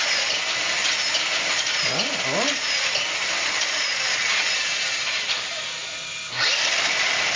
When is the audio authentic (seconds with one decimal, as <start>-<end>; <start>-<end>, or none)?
0.0-7.4